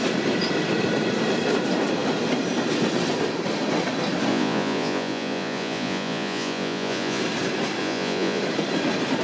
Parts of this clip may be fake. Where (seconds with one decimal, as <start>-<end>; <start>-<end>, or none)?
4.3-7.2; 7.8-8.4